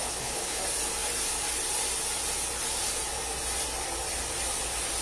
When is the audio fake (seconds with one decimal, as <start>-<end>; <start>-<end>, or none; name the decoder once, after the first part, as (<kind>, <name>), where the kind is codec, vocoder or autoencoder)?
0.0-0.6 (codec, HILCodec)